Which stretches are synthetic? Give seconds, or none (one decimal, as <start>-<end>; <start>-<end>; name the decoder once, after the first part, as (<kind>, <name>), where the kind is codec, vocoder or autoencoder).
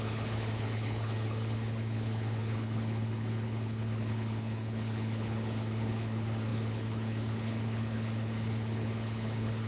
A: 0.0-9.7 (codec, HILCodec)